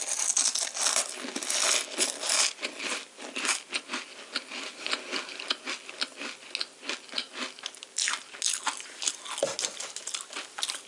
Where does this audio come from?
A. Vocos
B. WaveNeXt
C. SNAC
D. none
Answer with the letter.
D